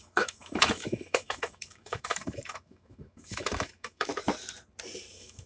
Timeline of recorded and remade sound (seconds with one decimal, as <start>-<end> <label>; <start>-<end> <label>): 0.0-4.1 remade; 4.1-5.1 recorded; 5.1-5.5 remade